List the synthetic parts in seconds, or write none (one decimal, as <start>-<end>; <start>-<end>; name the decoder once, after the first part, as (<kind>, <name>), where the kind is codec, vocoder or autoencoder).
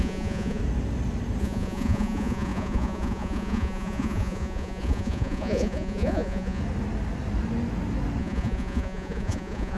0.0-0.6 (vocoder, Vocos); 1.4-6.6; 8.2-9.8